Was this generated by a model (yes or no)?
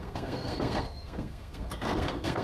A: yes